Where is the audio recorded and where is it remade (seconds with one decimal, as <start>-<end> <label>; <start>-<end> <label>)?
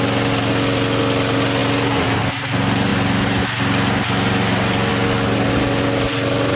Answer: 0.0-6.6 recorded